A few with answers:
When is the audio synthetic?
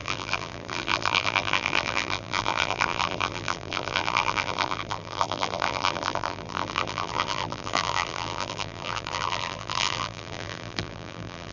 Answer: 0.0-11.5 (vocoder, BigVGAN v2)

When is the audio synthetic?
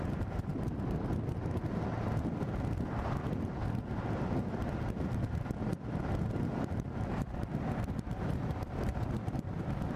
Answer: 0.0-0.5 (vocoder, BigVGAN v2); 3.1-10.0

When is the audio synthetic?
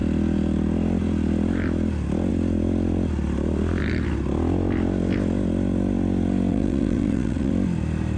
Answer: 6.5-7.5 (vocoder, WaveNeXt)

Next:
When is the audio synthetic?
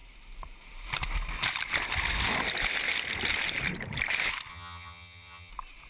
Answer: 4.5-5.5 (vocoder, HiFi-GAN)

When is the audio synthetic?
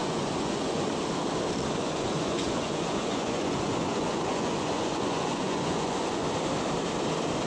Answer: 0.0-0.9 (vocoder, Vocos); 1.8-6.3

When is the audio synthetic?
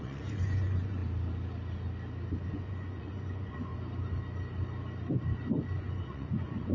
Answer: 0.0-1.0 (vocoder, Vocos); 2.5-3.7; 5.8-6.7